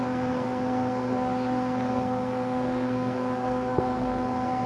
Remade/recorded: remade